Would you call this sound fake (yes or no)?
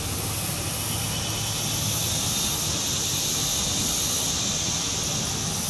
no